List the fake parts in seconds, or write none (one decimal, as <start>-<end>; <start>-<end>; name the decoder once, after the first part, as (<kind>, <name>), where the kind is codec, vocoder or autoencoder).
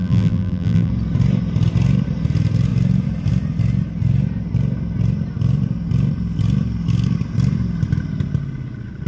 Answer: 0.0-0.9 (vocoder, BigVGAN v2)